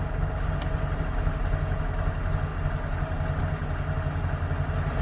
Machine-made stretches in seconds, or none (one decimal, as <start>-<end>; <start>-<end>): none